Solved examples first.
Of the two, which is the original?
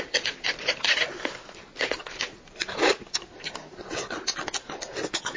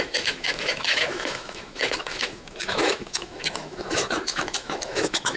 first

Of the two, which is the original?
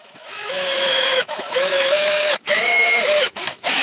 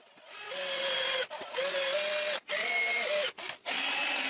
second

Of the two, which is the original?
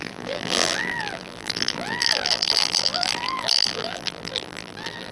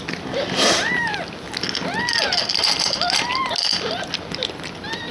second